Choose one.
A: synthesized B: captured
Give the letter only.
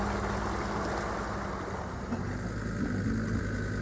B